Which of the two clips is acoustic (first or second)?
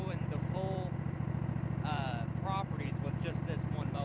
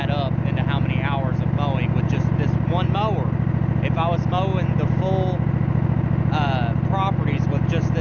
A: second